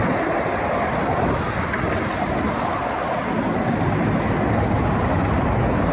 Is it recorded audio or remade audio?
recorded